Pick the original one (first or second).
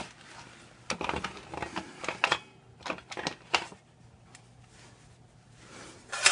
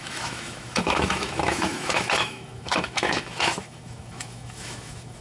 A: first